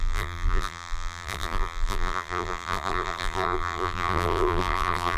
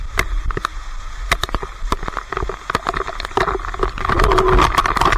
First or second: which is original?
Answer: second